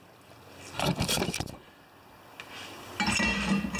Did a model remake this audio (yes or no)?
no